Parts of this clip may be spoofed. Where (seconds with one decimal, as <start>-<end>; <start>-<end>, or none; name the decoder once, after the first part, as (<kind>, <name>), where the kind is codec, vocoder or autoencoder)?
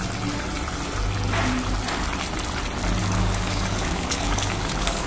3.0-5.1 (codec, DAC)